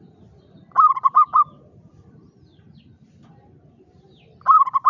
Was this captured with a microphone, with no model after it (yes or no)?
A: no